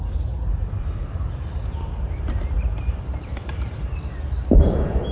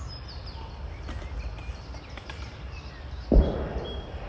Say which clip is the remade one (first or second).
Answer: first